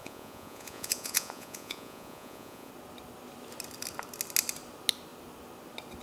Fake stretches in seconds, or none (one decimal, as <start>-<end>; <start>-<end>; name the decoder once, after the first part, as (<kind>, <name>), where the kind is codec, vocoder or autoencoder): 0.0-2.7 (vocoder, Vocos)